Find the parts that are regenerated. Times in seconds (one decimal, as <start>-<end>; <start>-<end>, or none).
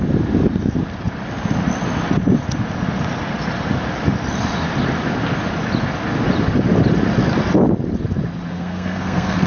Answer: 8.5-9.5